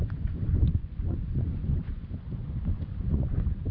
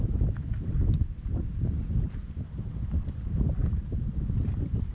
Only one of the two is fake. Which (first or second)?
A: first